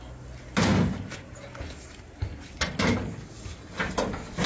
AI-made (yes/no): no